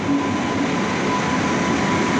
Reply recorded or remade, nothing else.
recorded